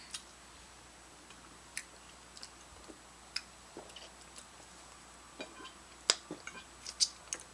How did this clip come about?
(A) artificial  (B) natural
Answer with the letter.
B